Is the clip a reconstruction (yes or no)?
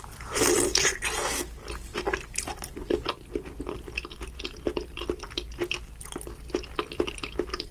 no